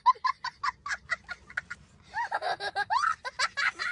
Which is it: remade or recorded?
recorded